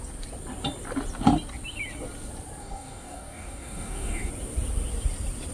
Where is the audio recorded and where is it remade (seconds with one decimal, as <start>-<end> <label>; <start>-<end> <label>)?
0.0-2.6 recorded; 2.6-4.3 remade; 4.3-5.5 recorded